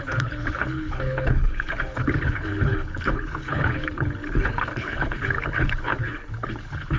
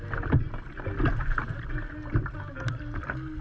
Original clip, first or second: second